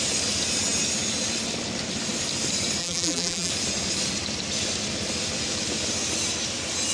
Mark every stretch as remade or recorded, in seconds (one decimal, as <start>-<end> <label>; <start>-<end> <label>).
0.0-2.8 recorded; 2.8-3.5 remade; 3.5-6.9 recorded